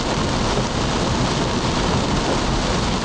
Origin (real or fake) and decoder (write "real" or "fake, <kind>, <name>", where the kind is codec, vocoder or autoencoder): real